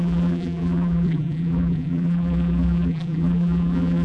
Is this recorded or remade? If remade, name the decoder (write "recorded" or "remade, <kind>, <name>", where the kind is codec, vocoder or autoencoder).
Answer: remade, vocoder, BigVGAN v2